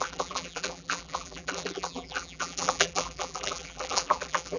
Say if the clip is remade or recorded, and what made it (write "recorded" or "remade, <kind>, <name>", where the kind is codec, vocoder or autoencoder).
remade, vocoder, BigVGAN v2